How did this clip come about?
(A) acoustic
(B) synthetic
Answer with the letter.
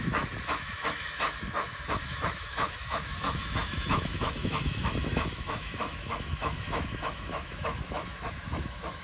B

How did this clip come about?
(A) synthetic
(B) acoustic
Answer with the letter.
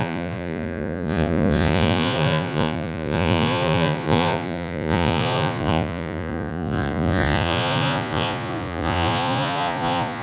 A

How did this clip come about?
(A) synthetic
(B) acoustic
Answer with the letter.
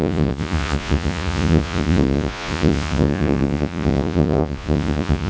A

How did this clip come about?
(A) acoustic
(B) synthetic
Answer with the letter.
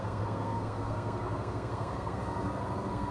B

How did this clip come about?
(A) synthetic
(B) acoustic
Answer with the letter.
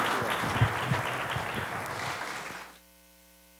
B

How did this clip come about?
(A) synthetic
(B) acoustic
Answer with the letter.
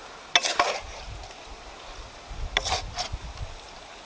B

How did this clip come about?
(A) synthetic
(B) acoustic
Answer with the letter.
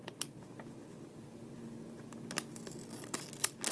B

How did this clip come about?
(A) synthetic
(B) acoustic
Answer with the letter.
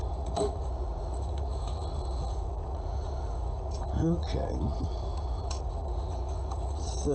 A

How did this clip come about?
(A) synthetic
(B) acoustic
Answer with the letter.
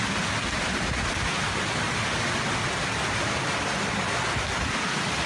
B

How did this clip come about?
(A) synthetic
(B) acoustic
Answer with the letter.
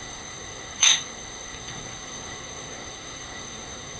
A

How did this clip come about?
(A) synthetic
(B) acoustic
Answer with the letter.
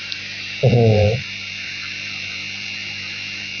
A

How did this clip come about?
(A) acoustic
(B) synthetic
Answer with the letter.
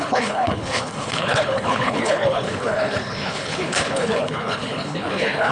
B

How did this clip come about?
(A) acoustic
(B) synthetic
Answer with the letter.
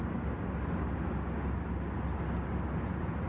A